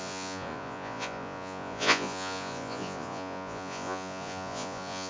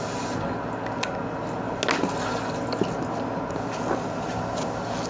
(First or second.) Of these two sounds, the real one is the second